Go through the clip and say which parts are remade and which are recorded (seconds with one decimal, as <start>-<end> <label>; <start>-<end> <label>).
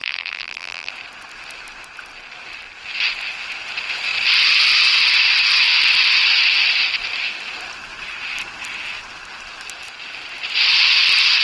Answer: 0.0-0.9 remade; 0.9-11.4 recorded